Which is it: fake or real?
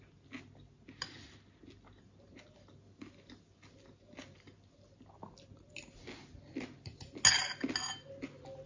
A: real